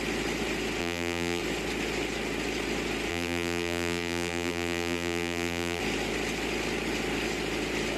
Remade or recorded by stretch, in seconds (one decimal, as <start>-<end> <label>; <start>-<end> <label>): 0.0-0.8 recorded; 0.8-1.4 remade; 1.4-3.1 recorded; 3.1-5.8 remade; 5.8-8.0 recorded